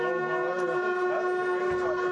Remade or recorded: recorded